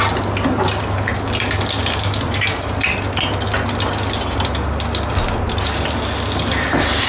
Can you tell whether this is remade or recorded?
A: recorded